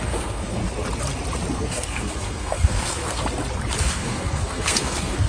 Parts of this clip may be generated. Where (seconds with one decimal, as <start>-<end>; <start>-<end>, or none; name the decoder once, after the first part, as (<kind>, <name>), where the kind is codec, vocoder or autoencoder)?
0.0-0.6 (codec, SNAC); 1.5-3.2; 3.8-5.3